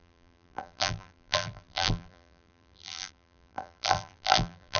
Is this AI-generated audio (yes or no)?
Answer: yes